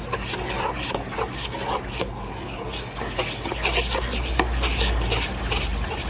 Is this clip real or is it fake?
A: real